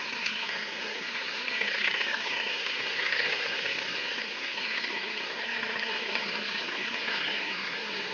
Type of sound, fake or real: fake